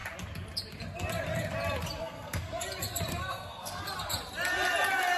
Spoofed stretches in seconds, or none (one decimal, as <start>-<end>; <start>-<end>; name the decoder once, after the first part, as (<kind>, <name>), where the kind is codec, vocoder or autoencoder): 2.0-2.6 (codec, SNAC); 3.1-3.8